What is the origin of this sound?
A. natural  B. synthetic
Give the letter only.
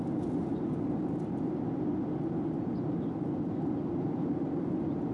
A